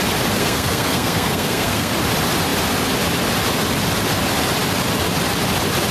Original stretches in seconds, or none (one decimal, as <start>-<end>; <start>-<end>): 0.0-0.4; 1.9-5.9